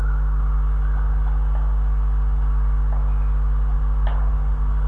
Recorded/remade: recorded